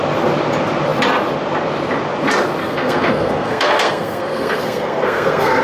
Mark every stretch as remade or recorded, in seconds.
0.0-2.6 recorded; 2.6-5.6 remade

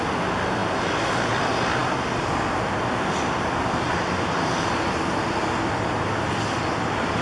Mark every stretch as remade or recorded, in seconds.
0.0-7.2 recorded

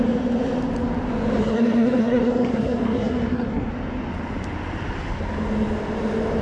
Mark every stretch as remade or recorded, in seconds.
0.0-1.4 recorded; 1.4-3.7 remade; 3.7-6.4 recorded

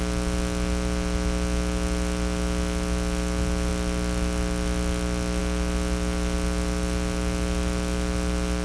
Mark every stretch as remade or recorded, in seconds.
0.0-8.6 recorded

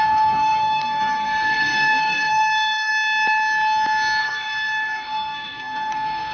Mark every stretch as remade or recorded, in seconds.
0.0-2.9 remade; 2.9-4.2 recorded; 4.2-6.3 remade

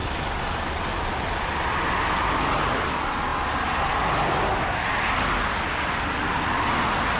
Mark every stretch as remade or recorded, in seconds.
0.0-7.2 recorded

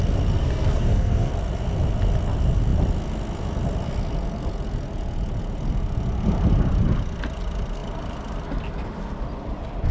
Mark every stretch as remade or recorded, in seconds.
0.0-0.4 recorded; 0.4-1.3 remade; 1.3-9.9 recorded

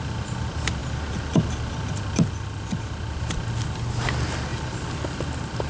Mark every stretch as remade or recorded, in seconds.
0.0-5.7 recorded